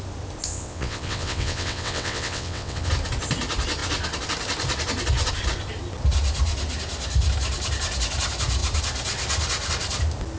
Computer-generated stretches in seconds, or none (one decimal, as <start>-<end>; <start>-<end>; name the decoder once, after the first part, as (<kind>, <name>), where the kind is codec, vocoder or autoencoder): 0.5-2.9 (vocoder, WaveNeXt)